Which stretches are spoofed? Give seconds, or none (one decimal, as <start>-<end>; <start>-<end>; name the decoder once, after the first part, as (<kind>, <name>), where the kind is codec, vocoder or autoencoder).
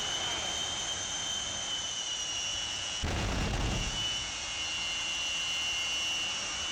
2.5-4.3 (vocoder, Vocos)